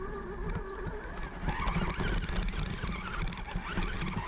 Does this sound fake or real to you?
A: real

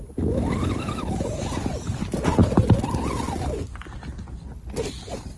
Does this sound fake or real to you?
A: real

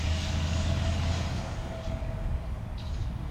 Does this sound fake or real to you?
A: fake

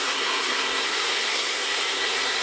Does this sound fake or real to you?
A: fake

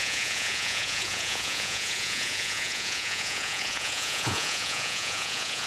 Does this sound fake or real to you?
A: fake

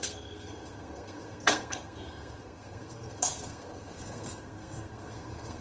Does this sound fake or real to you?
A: fake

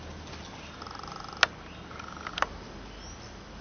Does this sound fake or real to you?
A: real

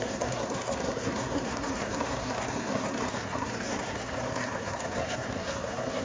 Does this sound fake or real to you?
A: fake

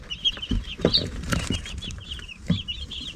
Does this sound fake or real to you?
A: fake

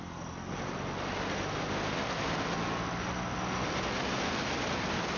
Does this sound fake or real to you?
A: real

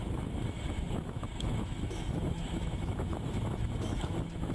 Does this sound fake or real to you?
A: fake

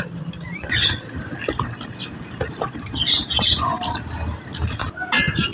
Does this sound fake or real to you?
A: real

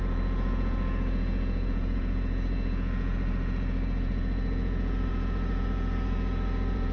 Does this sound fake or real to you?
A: fake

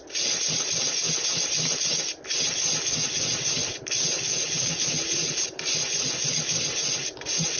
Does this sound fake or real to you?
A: real